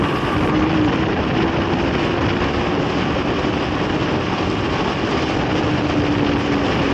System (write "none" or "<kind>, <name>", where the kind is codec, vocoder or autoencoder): none